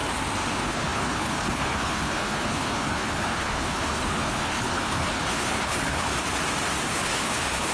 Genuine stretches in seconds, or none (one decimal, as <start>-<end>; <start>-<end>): 0.0-0.5; 6.1-6.9